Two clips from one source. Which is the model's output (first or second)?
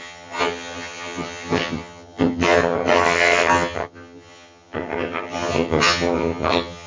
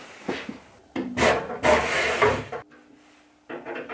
first